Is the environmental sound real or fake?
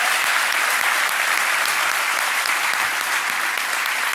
real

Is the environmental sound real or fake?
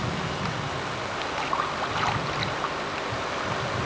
real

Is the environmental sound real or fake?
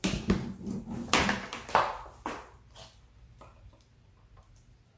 real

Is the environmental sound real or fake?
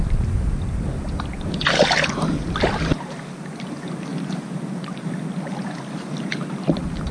real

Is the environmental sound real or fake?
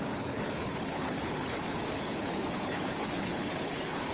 fake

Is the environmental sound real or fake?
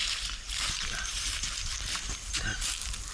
real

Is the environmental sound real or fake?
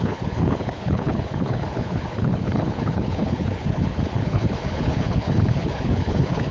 fake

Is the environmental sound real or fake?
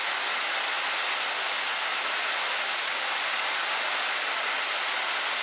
real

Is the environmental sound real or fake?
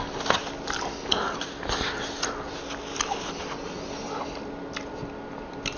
real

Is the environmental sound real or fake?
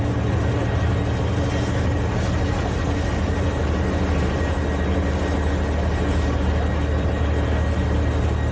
real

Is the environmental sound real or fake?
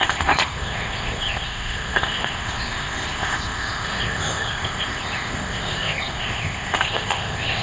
fake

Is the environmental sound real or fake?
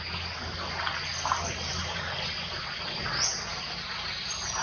real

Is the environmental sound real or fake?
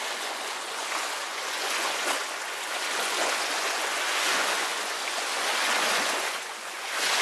fake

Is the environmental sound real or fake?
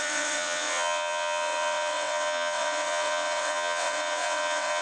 fake